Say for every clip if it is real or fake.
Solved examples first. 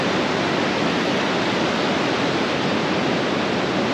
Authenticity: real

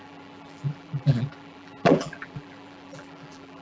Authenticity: fake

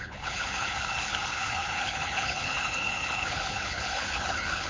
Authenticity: fake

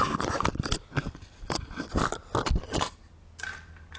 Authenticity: real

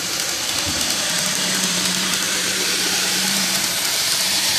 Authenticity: fake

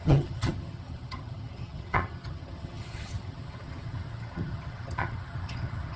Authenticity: fake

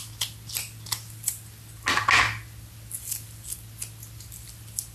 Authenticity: real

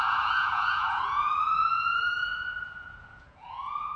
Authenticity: fake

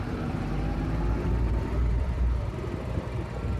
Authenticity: fake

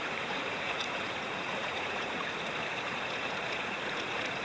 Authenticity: fake